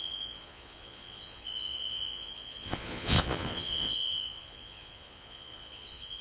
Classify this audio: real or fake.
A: fake